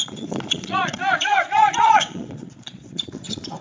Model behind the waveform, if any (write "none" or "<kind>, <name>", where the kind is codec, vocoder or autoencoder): vocoder, Vocos